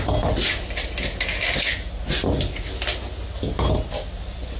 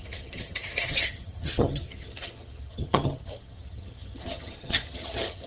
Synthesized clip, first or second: second